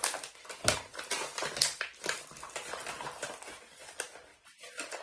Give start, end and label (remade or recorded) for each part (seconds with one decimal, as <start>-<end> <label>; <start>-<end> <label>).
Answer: 0.0-5.0 recorded